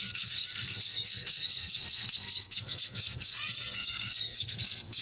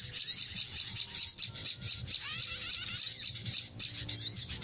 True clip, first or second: second